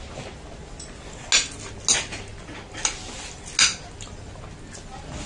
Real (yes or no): yes